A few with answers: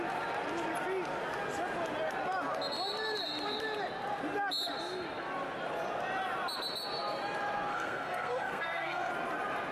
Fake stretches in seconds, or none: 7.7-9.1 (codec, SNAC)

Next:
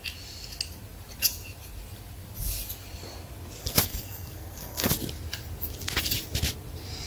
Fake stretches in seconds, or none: 3.6-4.9 (codec, SNAC)

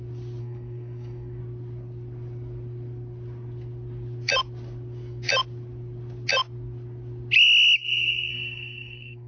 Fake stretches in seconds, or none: 0.4-1.4 (codec, SNAC); 8.3-9.3

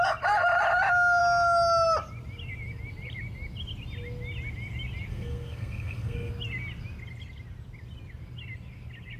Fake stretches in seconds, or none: 5.1-6.3 (codec, SNAC)

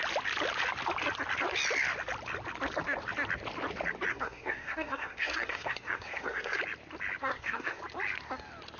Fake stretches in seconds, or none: 4.1-6.6 (codec, SNAC); 7.2-7.8

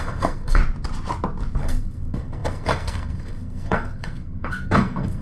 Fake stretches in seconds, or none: 0.0-0.6 (codec, SNAC); 1.6-5.2